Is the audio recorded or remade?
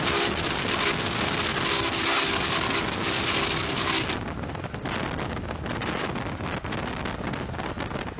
recorded